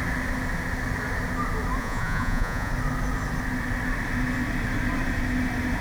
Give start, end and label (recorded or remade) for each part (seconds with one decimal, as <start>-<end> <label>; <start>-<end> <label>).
0.0-1.8 recorded; 1.8-2.7 remade; 2.7-5.8 recorded